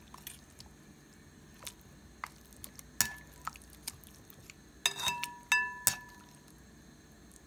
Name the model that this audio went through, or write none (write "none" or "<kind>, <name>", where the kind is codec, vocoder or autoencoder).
none